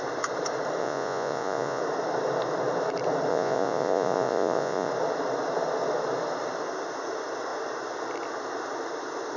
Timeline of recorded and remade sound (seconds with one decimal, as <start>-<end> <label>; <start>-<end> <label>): 0.0-0.8 recorded; 0.8-1.8 remade; 1.8-3.3 recorded; 3.3-4.9 remade; 4.9-9.4 recorded